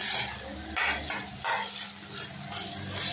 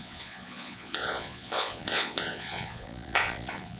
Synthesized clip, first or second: second